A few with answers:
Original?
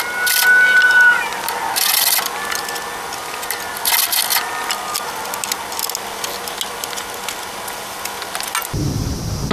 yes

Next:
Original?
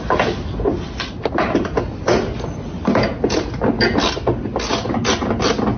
yes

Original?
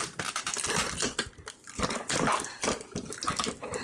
yes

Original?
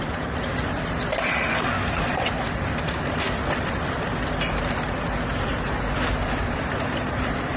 no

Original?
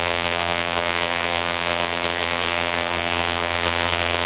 no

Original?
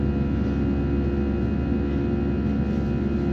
yes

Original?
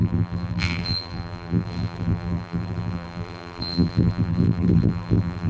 no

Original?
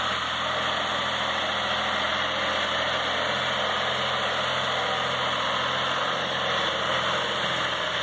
yes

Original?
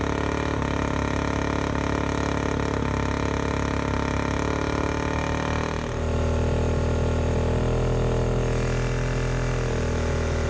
yes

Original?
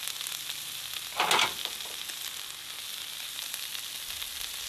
yes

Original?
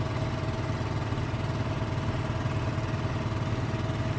yes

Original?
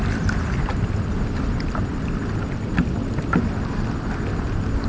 no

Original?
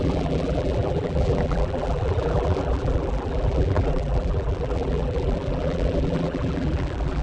no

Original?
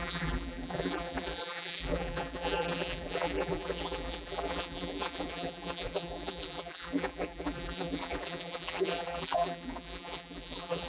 no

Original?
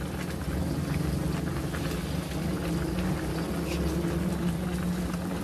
yes